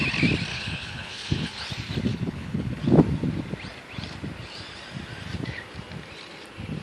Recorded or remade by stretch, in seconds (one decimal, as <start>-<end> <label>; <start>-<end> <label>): 0.0-0.5 recorded; 0.5-1.7 remade; 1.7-2.1 recorded; 2.1-2.8 remade; 2.8-6.8 recorded